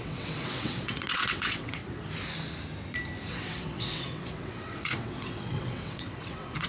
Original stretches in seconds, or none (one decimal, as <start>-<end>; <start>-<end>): 1.8-3.3